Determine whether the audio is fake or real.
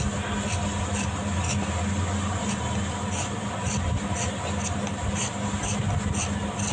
real